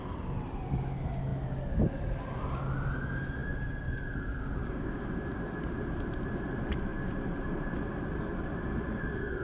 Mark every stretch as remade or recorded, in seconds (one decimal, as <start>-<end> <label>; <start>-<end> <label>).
0.0-4.6 recorded; 4.6-5.1 remade; 5.1-9.4 recorded